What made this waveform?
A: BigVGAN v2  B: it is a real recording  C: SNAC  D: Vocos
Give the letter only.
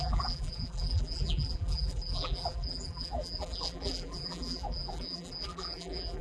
A